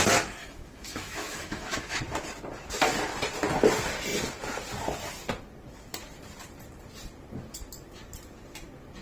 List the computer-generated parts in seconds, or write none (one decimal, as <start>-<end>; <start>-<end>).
0.4-2.0